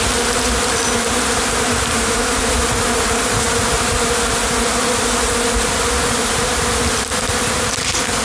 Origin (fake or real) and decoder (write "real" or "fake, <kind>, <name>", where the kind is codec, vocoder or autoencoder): real